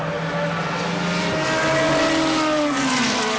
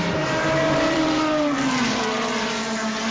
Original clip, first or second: first